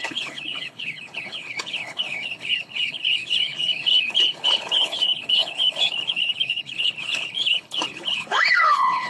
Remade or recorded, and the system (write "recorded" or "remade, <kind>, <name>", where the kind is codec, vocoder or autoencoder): remade, codec, HILCodec